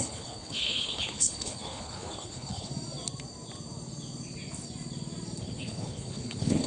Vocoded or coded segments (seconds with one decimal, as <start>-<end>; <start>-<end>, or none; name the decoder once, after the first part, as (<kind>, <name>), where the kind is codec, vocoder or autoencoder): 0.0-2.7 (codec, HILCodec); 5.4-6.7